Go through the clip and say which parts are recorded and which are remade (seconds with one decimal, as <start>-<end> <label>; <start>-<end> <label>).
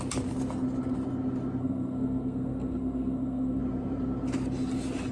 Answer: 0.0-1.6 recorded; 1.6-3.6 remade; 3.6-5.1 recorded